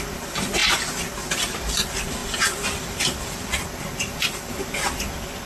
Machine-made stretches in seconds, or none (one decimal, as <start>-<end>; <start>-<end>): none